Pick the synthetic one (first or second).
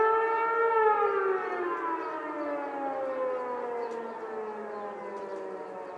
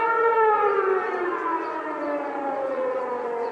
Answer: second